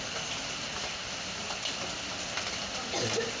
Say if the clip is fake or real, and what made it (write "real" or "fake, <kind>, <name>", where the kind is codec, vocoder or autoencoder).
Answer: real